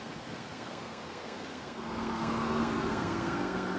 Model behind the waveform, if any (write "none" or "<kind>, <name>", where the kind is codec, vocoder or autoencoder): codec, SNAC